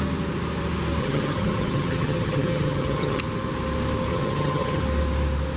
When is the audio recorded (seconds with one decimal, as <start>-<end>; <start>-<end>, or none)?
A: 0.0-1.0; 3.2-4.1; 4.8-5.6